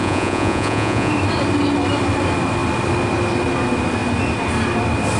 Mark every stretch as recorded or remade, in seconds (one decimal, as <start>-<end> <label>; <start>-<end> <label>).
0.0-1.1 remade; 1.1-5.2 recorded